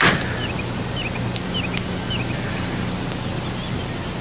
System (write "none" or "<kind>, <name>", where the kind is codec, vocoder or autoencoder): none